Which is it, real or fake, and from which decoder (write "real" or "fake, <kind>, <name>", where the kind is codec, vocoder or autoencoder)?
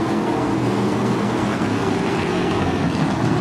fake, codec, SNAC